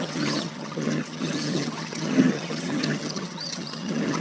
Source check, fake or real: fake